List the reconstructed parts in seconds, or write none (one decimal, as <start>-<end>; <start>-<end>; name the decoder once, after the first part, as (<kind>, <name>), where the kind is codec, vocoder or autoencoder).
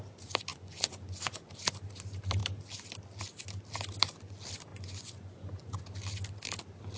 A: 0.5-1.5 (vocoder, Vocos); 4.7-5.8